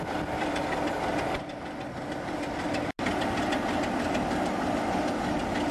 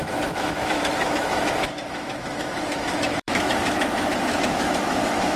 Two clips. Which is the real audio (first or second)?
first